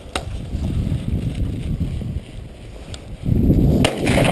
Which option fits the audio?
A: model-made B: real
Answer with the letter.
B